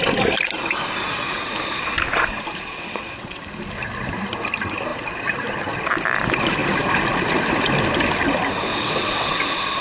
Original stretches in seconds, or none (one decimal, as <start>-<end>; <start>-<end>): 0.0-2.7; 3.4-8.7; 9.3-9.8